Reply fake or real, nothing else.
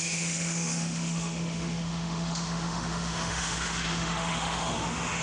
fake